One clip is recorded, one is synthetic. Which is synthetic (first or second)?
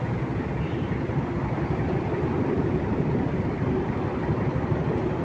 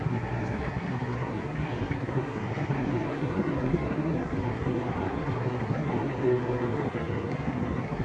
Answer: second